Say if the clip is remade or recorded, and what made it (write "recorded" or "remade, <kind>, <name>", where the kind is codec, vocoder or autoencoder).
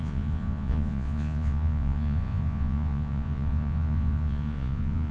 remade, vocoder, Vocos